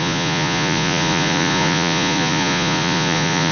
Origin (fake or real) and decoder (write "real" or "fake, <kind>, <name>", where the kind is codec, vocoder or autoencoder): fake, vocoder, Vocos